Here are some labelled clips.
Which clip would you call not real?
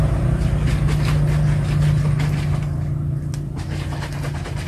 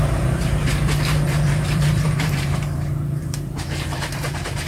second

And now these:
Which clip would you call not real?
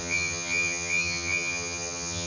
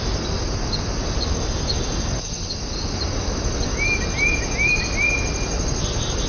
first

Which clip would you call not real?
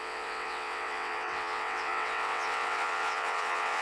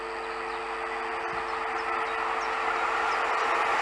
first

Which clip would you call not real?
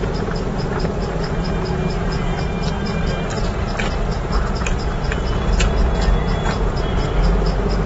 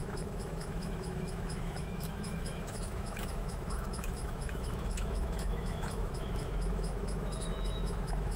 second